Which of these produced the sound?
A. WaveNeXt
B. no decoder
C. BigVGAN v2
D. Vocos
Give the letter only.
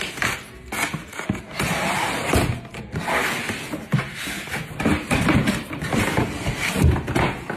B